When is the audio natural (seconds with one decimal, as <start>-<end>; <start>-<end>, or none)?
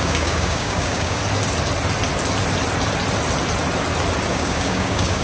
1.2-4.3